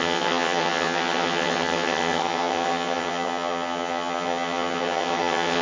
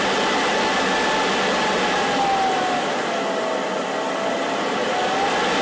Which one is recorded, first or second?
second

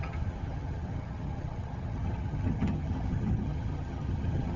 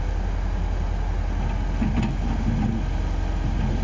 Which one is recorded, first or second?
second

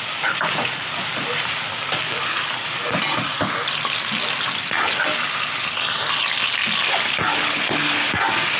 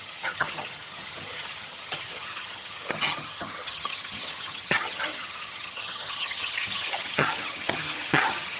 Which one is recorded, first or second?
first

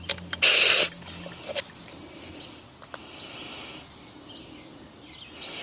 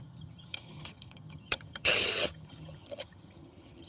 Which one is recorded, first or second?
first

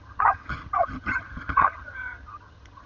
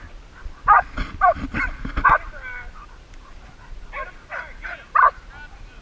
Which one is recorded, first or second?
second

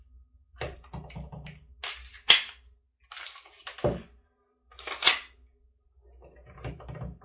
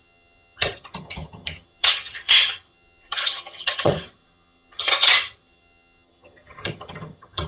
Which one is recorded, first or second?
first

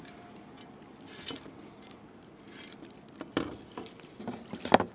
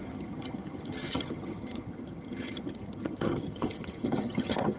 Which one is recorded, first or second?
first